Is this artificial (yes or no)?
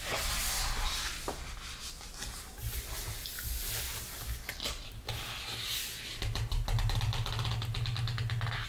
no